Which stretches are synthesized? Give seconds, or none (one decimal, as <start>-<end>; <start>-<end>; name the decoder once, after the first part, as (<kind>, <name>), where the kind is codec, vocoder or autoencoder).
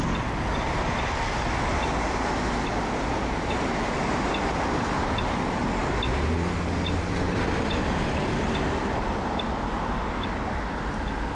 none